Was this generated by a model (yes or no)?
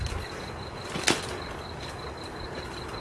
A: no